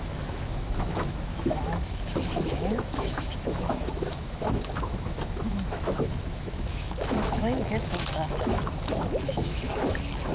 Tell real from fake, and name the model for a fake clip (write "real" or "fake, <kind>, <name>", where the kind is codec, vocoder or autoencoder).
fake, autoencoder, DAC-VAE